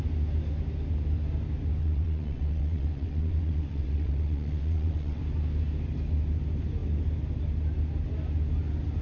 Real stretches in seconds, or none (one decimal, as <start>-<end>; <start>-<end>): 0.0-1.8; 5.2-9.0